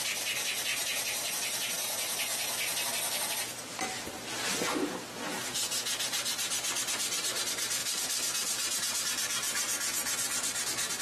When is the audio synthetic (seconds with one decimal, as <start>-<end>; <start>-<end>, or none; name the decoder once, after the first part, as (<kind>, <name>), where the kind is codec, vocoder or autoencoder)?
0.7-1.3 (vocoder, BigVGAN v2); 7.8-11.0